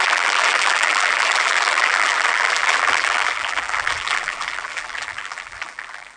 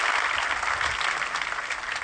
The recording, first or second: second